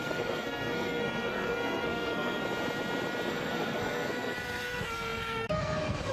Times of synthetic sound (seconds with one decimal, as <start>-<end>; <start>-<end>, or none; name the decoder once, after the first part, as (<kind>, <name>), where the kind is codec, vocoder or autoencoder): 0.0-2.4 (codec, SNAC); 3.3-6.1